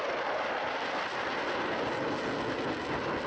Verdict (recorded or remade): recorded